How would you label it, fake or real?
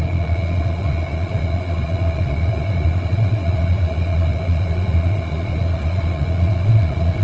fake